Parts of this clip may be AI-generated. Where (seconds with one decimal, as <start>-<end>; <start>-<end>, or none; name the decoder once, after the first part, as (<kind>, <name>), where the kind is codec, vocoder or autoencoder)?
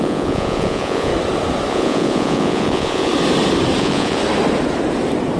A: 0.0-1.1 (vocoder, Vocos); 1.7-3.1; 3.8-4.2